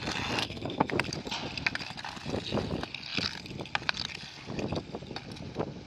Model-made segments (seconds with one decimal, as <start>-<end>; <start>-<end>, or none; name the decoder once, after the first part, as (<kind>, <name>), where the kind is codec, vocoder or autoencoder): 0.4-0.9 (codec, SNAC)

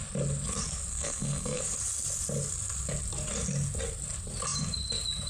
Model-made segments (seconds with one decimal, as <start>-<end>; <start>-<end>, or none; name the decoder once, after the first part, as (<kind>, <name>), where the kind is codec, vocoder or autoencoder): 0.9-1.6 (codec, SNAC)